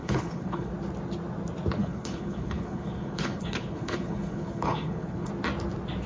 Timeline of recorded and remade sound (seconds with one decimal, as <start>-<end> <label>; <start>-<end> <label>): 0.0-0.7 remade; 0.7-1.8 recorded; 1.8-5.3 remade; 5.3-6.1 recorded